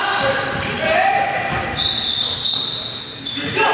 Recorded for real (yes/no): yes